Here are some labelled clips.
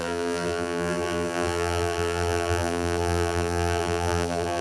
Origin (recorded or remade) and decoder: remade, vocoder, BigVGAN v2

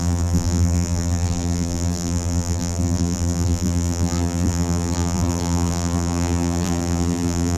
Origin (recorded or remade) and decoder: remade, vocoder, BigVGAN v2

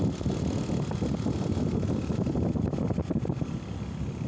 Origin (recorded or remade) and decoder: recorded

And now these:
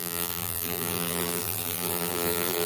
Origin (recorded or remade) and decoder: remade, vocoder, BigVGAN v2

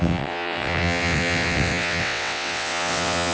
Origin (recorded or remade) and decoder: remade, vocoder, WaveNeXt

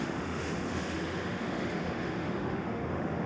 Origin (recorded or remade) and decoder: remade, autoencoder, DAC-VAE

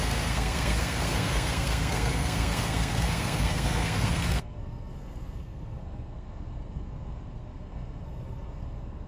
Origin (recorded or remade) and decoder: remade, codec, SNAC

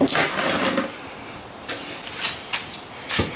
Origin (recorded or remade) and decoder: recorded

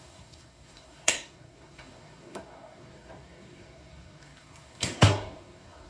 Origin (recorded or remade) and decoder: remade, codec, SNAC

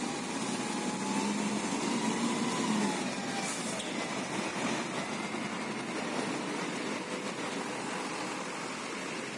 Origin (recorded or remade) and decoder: recorded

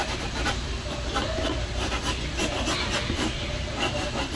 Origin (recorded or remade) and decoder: recorded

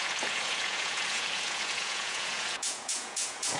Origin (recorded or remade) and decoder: remade, vocoder, Vocos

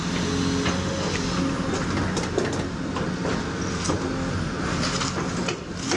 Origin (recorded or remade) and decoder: recorded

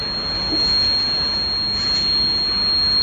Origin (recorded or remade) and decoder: recorded